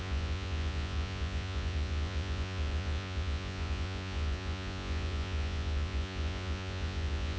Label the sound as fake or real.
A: fake